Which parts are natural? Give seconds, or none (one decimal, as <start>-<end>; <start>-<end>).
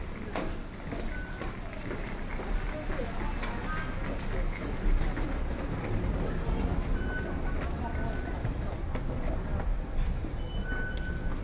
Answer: 0.0-11.4